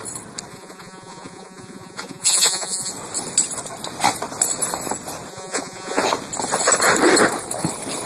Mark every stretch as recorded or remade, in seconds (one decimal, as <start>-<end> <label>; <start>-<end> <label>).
0.0-0.5 recorded; 0.5-2.9 remade; 2.9-5.3 recorded; 5.3-6.0 remade; 6.0-8.1 recorded